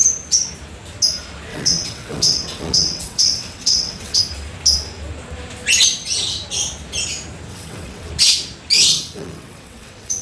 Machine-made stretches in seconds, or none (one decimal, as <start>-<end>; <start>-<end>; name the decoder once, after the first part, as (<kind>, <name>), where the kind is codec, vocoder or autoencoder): 1.5-4.2 (vocoder, WaveNeXt); 7.5-8.1; 8.9-10.2